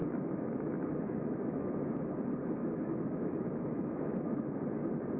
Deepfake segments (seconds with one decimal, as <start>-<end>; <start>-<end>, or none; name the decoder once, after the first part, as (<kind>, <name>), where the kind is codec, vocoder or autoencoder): 0.0-2.2 (autoencoder, DAC-VAE); 2.6-4.6